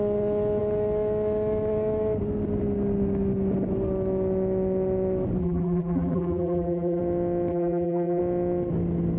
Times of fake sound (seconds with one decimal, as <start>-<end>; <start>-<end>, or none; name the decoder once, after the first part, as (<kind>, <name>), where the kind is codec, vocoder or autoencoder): 5.4-7.0 (vocoder, BigVGAN v2); 7.5-8.2